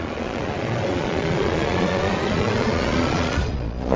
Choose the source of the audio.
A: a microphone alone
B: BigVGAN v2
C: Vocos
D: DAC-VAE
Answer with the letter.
C